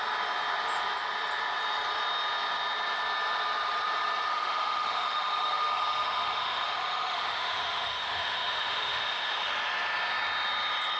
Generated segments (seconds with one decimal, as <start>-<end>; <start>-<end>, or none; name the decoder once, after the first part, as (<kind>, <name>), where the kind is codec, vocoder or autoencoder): 4.3-9.5 (autoencoder, DAC-VAE)